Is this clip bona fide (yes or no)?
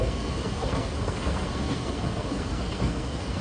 no